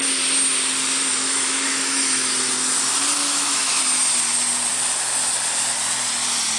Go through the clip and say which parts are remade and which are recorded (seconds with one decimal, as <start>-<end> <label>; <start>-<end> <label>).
0.0-1.1 recorded; 1.1-2.3 remade; 2.3-3.2 recorded; 3.2-3.8 remade; 3.8-6.6 recorded